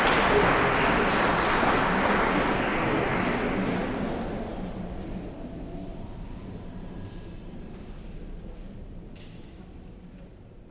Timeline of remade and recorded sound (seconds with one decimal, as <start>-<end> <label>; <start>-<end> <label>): 0.0-10.7 recorded